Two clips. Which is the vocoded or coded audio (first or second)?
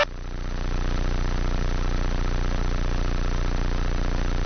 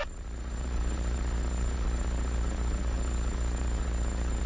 second